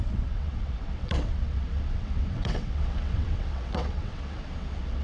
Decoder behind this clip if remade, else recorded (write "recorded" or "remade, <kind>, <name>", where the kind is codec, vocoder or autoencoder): remade, vocoder, WaveNeXt